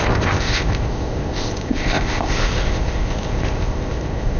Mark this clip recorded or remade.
remade